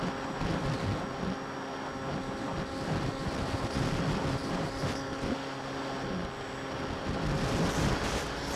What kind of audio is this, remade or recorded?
recorded